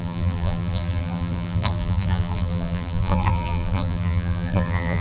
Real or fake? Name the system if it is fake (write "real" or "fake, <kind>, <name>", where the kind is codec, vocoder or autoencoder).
fake, vocoder, BigVGAN v2